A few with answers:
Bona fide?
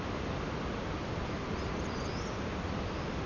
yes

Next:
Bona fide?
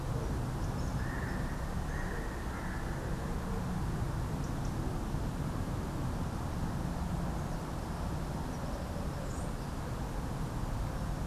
yes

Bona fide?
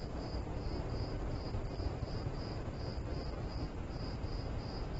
no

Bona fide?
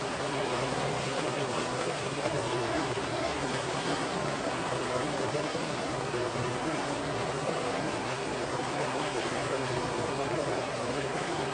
no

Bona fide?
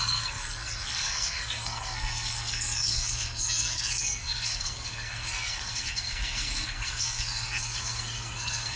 no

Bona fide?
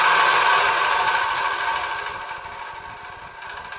yes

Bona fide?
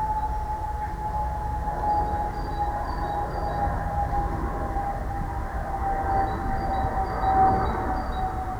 yes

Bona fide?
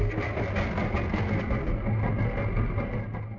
yes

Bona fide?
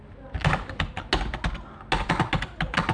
yes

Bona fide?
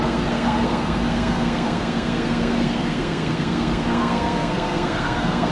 no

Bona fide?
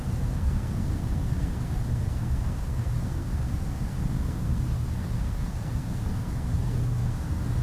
no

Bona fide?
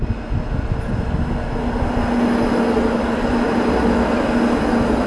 yes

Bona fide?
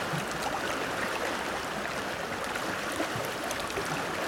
yes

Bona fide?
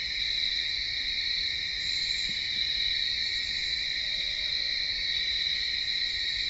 no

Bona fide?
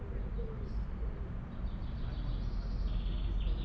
yes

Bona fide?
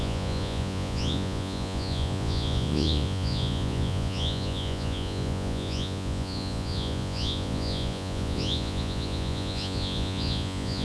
no